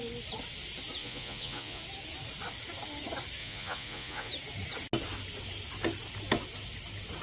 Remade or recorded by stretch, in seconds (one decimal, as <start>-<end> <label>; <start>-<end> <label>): 0.0-1.0 recorded; 1.0-1.8 remade; 1.8-3.4 recorded; 3.4-4.3 remade; 4.3-7.2 recorded